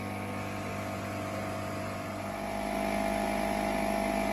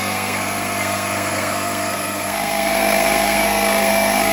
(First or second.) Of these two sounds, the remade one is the second